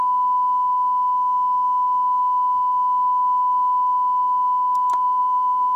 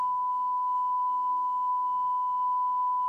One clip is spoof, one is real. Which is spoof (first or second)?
second